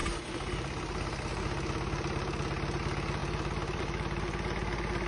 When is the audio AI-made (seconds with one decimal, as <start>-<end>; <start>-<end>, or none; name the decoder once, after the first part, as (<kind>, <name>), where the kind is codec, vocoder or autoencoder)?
3.2-5.1 (vocoder, BigVGAN v2)

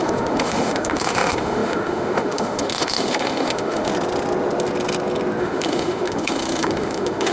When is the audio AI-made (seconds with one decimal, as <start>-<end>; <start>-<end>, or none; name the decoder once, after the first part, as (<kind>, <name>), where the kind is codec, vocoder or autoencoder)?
0.0-3.9 (autoencoder, DAC-VAE); 5.4-7.3